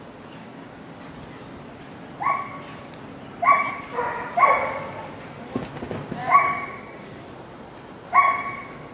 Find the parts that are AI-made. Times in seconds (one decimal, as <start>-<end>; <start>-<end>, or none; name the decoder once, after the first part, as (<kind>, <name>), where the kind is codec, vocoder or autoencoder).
0.4-1.0 (codec, DAC); 6.2-7.2